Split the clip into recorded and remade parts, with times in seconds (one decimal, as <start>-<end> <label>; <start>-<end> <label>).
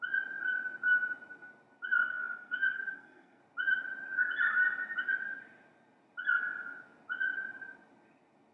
0.0-2.0 recorded; 2.0-3.4 remade; 3.4-8.5 recorded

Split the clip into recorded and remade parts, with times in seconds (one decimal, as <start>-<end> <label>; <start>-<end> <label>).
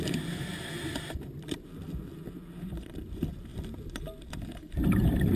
0.0-5.4 recorded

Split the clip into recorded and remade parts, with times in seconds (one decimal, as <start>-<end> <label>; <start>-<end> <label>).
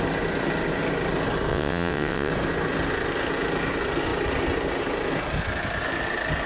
0.0-1.5 recorded; 1.5-2.3 remade; 2.3-6.5 recorded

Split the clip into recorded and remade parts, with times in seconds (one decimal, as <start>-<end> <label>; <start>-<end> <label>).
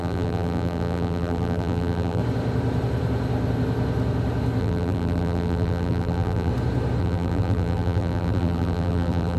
0.0-2.2 remade; 2.2-4.6 recorded; 4.6-6.5 remade; 6.5-7.0 recorded; 7.0-9.4 remade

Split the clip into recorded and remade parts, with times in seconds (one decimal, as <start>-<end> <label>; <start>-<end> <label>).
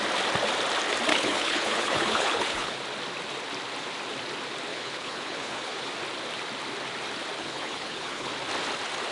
0.0-1.1 recorded; 1.1-2.8 remade; 2.8-4.7 recorded; 4.7-5.9 remade; 5.9-7.4 recorded; 7.4-8.3 remade; 8.3-9.1 recorded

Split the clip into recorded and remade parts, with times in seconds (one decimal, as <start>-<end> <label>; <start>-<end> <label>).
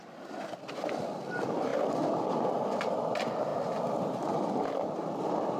0.0-1.7 remade; 1.7-2.9 recorded; 2.9-3.5 remade; 3.5-4.3 recorded; 4.3-5.6 remade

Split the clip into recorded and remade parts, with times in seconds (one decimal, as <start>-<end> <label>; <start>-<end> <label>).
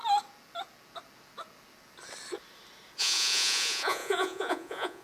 0.0-3.0 recorded; 3.0-5.0 remade